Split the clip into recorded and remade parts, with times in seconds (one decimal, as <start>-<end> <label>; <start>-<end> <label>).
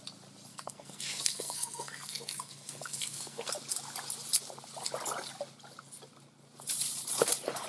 0.0-0.5 recorded; 0.5-3.5 remade; 3.5-7.7 recorded